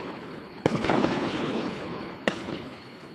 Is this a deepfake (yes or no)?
yes